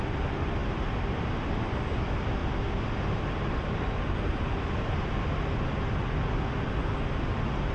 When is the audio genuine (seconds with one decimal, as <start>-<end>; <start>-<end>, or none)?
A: 0.0-7.7